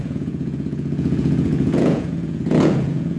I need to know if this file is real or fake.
fake